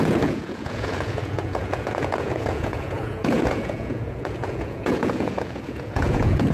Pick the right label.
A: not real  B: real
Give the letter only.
A